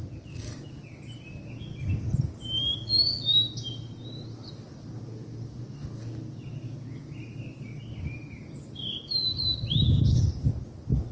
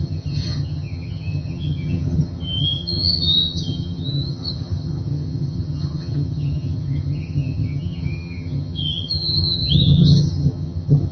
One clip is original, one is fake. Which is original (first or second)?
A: first